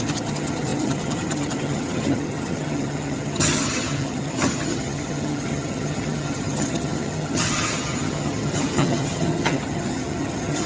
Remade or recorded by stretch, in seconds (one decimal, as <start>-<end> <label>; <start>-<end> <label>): 0.0-10.7 remade